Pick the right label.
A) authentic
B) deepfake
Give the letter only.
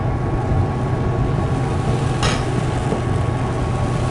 A